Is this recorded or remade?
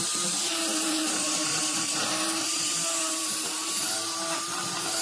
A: remade